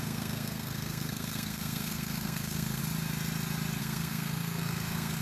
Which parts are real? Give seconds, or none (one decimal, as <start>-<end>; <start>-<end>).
2.8-3.8